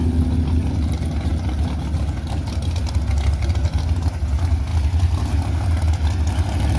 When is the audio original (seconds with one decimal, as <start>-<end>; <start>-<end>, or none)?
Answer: 0.0-6.8